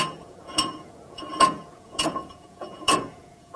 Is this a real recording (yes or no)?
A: no